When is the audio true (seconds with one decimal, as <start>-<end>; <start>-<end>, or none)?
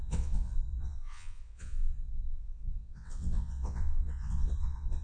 none